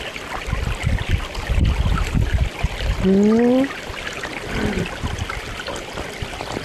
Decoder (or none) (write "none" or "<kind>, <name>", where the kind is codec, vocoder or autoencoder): none